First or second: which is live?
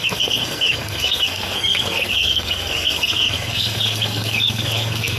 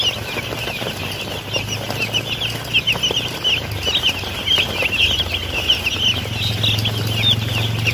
second